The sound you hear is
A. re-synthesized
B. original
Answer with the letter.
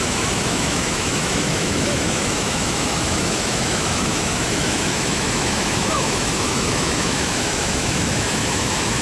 A